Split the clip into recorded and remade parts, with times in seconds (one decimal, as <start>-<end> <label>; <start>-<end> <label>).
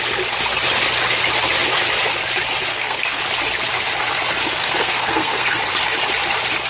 0.0-2.7 recorded; 2.7-3.2 remade; 3.2-4.6 recorded; 4.6-5.6 remade; 5.6-6.7 recorded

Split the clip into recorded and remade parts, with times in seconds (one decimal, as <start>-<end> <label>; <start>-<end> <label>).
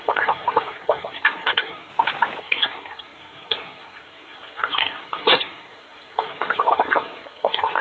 0.0-1.9 remade; 1.9-2.4 recorded; 2.4-7.8 remade